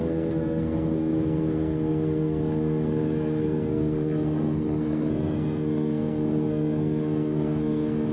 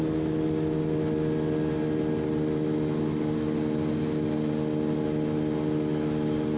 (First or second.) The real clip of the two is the second